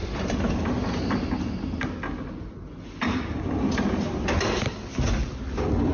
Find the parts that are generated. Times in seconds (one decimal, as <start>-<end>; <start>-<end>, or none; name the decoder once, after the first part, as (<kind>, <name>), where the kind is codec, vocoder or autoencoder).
none